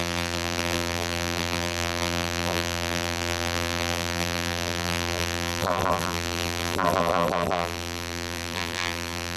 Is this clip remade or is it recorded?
remade